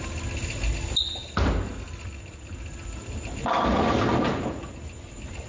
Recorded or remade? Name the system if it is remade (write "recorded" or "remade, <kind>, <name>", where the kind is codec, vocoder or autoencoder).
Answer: recorded